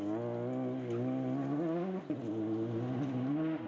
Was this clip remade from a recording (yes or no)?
no